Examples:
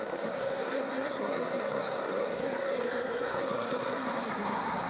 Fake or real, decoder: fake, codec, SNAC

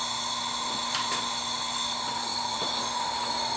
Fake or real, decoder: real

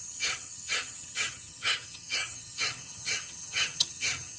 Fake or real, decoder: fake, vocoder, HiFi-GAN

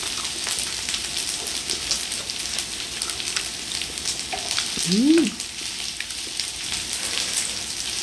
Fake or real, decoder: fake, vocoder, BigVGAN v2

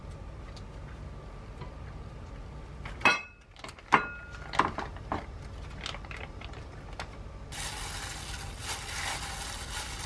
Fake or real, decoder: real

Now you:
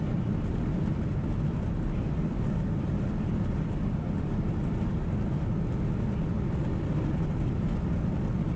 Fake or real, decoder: real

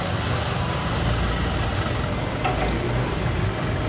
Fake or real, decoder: real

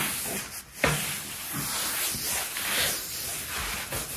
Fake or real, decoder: real